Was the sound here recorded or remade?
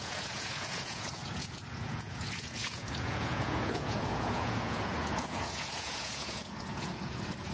remade